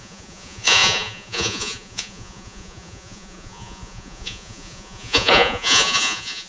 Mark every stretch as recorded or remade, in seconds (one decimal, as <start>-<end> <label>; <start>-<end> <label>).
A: 0.0-6.5 remade

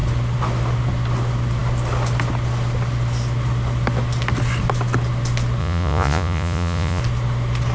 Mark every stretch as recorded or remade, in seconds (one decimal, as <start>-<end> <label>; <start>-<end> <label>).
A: 0.0-5.6 recorded; 5.6-7.0 remade; 7.0-7.7 recorded

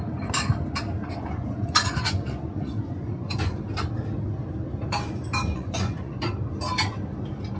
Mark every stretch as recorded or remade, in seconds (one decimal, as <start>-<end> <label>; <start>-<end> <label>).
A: 0.0-1.0 recorded; 1.0-3.6 remade; 3.6-5.5 recorded; 5.5-6.2 remade; 6.2-7.6 recorded

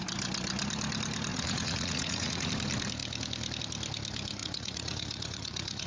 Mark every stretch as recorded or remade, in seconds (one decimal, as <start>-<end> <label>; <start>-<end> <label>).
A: 0.0-1.3 recorded; 1.3-2.5 remade; 2.5-4.4 recorded; 4.4-5.9 remade

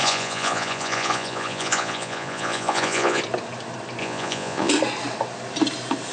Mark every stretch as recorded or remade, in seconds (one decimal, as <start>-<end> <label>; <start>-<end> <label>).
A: 0.0-3.2 remade; 3.2-4.0 recorded; 4.0-4.7 remade; 4.7-6.1 recorded

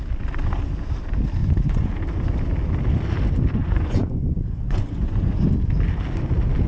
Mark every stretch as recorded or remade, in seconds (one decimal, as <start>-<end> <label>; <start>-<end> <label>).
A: 0.0-1.4 recorded; 1.4-1.9 remade; 1.9-3.6 recorded; 3.6-5.5 remade; 5.5-6.7 recorded

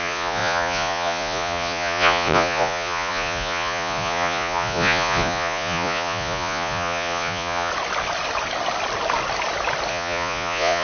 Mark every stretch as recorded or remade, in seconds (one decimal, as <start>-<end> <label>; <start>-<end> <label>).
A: 0.0-7.7 remade; 7.7-9.9 recorded; 9.9-10.8 remade